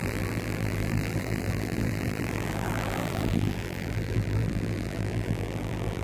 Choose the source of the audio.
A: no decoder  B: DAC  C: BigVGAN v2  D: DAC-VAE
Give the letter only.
C